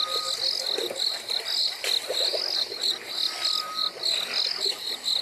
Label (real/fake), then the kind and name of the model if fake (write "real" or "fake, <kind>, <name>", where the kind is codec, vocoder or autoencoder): real